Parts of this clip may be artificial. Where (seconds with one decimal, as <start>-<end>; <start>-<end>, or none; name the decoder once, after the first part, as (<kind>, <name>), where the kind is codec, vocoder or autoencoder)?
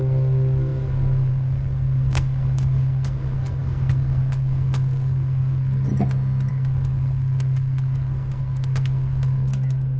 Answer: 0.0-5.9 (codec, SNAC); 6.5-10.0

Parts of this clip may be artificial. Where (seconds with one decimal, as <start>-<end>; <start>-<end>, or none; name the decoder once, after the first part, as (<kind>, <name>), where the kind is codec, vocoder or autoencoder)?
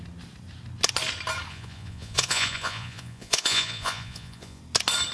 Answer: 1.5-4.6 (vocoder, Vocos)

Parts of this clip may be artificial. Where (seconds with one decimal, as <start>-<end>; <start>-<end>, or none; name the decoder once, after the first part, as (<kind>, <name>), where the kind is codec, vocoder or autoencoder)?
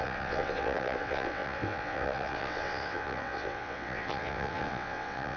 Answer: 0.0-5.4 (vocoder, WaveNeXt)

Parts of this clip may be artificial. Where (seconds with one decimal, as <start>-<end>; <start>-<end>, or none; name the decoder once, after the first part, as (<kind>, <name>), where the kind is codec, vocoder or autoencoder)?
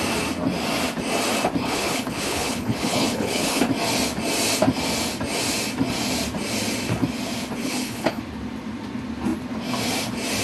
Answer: 1.6-3.6 (codec, HILCodec); 7.6-8.2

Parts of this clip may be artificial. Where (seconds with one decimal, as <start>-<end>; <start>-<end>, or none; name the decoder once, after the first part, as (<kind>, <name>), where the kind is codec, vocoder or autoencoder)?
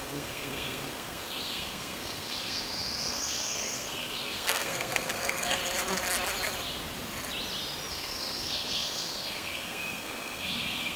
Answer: 0.0-5.6 (codec, SNAC); 7.9-11.0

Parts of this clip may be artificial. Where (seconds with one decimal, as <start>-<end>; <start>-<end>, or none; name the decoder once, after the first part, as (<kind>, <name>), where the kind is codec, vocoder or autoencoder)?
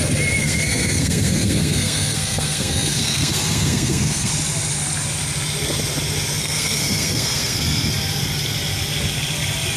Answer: 0.4-4.3 (codec, SNAC); 6.4-7.9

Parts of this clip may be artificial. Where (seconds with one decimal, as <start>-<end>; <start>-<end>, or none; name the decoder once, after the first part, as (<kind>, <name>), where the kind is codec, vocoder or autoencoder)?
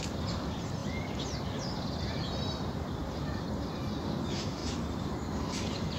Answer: 0.0-3.0 (vocoder, BigVGAN v2); 3.7-6.0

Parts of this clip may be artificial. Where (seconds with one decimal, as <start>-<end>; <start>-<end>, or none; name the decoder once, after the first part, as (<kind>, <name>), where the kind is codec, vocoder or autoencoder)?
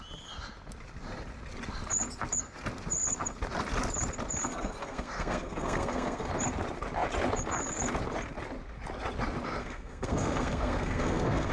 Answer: 4.5-6.3 (codec, SNAC); 9.6-11.5